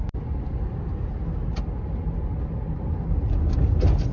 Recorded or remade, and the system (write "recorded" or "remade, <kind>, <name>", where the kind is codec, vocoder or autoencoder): recorded